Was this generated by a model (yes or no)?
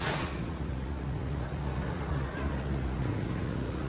yes